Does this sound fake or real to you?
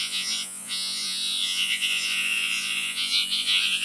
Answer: fake